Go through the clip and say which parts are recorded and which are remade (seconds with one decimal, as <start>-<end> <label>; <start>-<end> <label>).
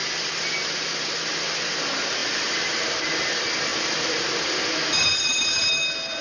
0.0-2.2 recorded; 2.2-3.1 remade; 3.1-3.7 recorded; 3.7-4.7 remade; 4.7-6.2 recorded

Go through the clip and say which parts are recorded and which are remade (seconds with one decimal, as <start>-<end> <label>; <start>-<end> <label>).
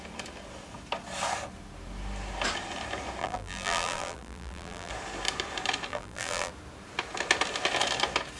0.0-3.2 recorded; 3.2-4.9 remade; 4.9-5.9 recorded; 5.9-6.5 remade; 6.5-8.4 recorded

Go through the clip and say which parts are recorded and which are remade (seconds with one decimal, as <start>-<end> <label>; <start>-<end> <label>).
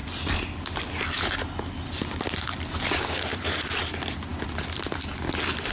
0.0-3.3 recorded; 3.3-3.9 remade; 3.9-5.7 recorded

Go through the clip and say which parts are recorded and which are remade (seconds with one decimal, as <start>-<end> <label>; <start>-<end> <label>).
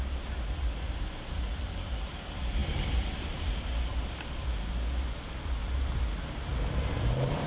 0.0-2.6 recorded; 2.6-3.5 remade; 3.5-6.5 recorded; 6.5-7.5 remade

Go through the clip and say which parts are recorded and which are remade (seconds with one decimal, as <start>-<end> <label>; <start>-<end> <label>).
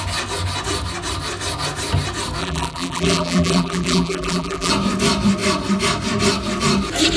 0.0-2.4 recorded; 2.4-4.7 remade; 4.7-7.2 recorded